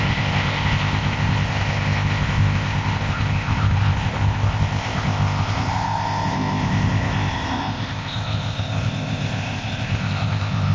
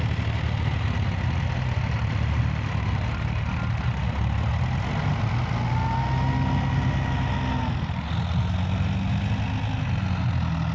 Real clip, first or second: second